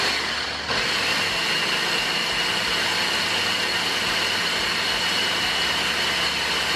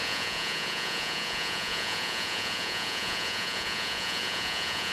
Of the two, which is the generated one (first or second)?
second